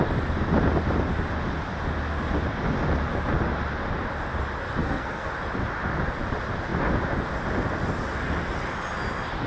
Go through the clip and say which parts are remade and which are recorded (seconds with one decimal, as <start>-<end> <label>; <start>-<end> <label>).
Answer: 0.0-4.8 recorded; 4.8-5.3 remade; 5.3-9.5 recorded